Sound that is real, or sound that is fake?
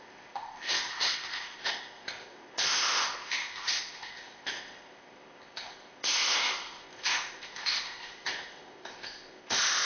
fake